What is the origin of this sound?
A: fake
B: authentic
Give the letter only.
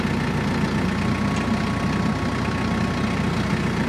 B